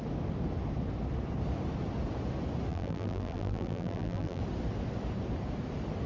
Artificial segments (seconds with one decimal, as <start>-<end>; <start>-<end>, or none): 2.7-4.4